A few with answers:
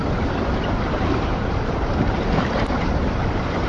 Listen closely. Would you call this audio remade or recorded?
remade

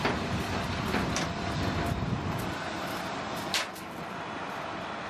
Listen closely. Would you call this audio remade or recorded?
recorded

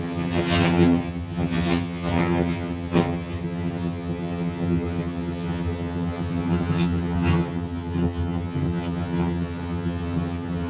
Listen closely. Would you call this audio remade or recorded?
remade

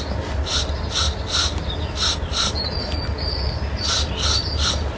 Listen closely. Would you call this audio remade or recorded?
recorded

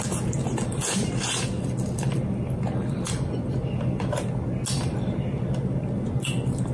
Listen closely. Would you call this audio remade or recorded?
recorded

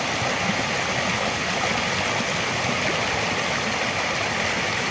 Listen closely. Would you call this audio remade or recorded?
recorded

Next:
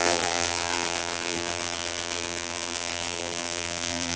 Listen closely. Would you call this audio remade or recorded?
remade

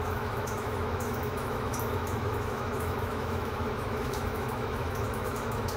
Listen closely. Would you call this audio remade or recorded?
remade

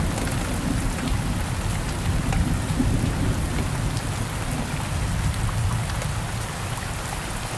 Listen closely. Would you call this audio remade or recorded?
recorded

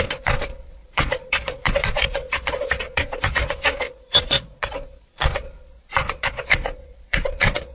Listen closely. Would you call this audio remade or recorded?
remade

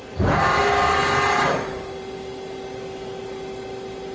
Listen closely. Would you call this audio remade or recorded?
recorded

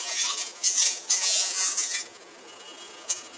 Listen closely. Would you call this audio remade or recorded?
remade